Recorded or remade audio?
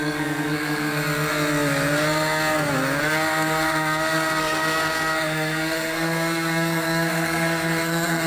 remade